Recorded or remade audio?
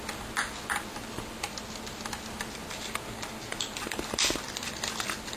recorded